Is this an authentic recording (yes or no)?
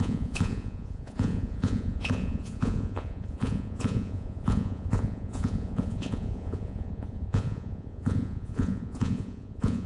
no